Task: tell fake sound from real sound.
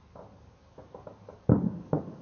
fake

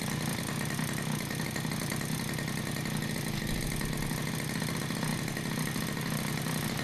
real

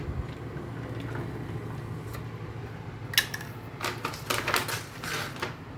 real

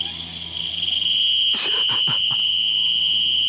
real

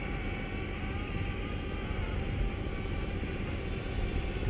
real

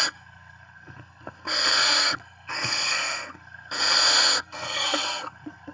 fake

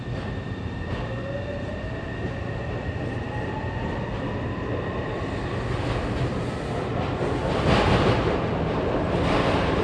real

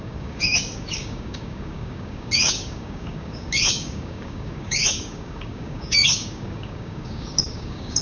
fake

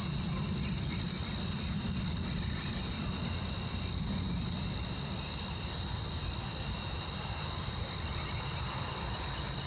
real